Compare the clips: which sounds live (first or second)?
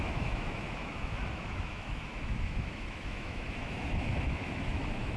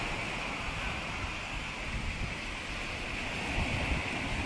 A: second